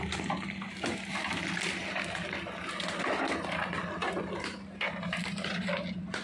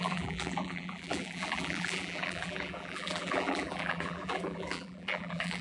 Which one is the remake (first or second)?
second